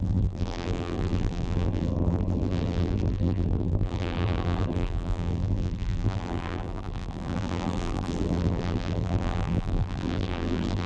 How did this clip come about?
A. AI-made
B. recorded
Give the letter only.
A